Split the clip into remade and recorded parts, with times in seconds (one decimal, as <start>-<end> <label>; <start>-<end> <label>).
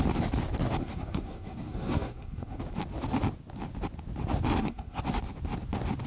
0.0-0.8 recorded; 0.8-2.6 remade; 2.6-4.5 recorded; 4.5-5.0 remade; 5.0-6.1 recorded